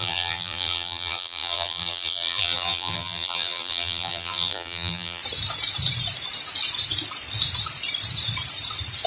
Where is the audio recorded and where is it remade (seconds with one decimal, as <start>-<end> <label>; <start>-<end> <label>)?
0.0-5.2 remade; 5.2-9.1 recorded